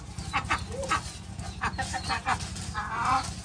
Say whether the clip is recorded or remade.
recorded